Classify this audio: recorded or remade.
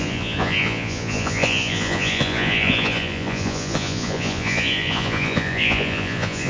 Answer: remade